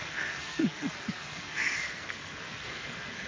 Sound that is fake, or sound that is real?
fake